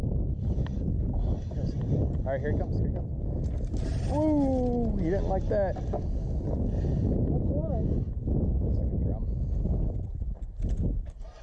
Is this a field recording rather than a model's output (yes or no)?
yes